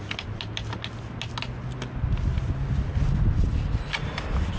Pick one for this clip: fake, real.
real